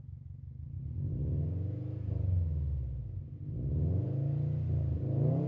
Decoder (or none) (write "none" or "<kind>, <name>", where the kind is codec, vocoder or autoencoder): none